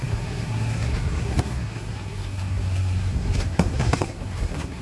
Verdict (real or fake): fake